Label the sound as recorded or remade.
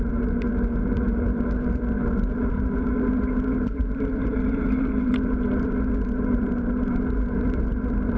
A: remade